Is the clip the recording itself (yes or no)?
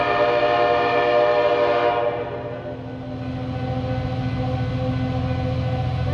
yes